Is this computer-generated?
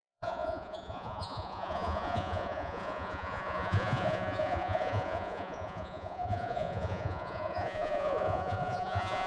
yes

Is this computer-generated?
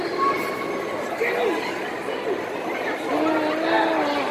no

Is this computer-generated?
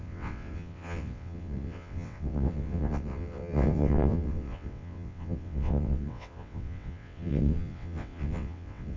yes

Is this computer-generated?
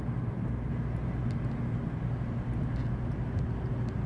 no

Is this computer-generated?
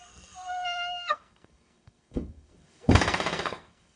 yes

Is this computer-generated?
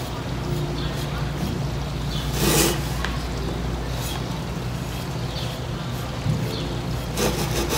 no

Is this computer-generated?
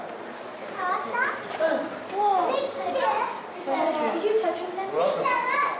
no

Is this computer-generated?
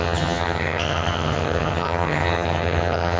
yes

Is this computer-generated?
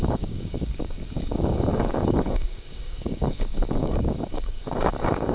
yes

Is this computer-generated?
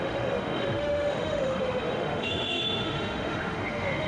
yes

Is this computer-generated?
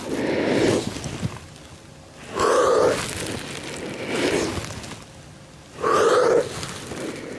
no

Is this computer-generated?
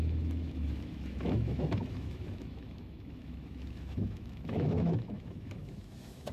yes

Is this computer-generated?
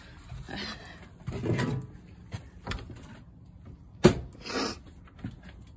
no